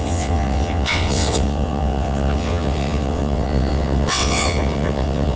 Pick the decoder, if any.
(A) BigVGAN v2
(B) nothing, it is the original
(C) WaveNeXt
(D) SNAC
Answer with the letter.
C